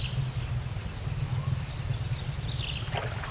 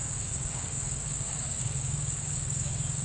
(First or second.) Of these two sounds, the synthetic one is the second